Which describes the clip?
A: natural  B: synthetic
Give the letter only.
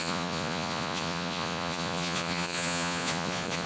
B